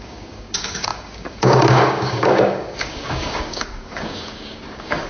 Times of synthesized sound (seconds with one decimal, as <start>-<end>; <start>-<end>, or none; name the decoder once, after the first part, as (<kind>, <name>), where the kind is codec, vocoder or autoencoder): 0.0-5.1 (codec, DAC)